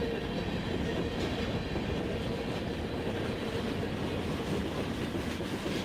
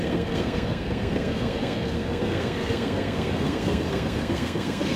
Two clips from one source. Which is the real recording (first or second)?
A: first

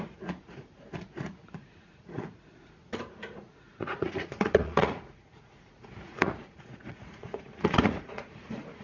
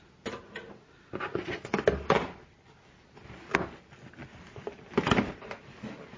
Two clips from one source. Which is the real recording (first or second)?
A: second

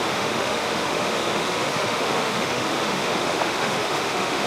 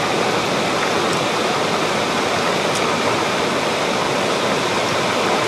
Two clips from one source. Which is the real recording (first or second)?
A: second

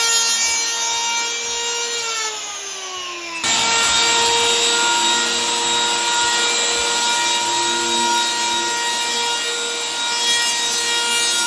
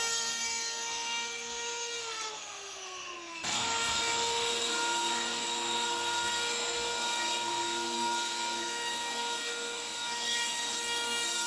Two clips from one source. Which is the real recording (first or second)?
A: first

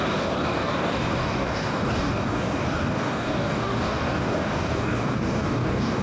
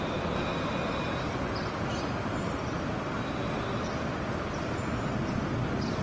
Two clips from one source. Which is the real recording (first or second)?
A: second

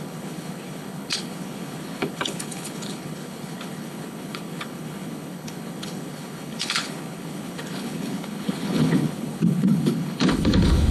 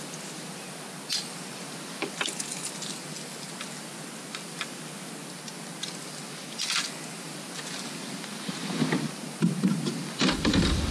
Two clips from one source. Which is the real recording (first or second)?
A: second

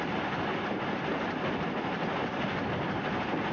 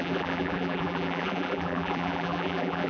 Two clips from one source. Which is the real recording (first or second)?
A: first